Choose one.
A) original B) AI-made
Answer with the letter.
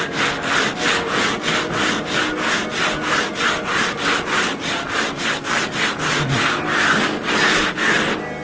A